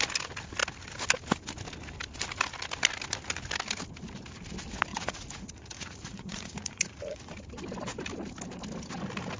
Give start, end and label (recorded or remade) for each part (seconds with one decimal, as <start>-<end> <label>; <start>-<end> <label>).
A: 0.0-4.9 recorded; 4.9-7.3 remade; 7.3-9.4 recorded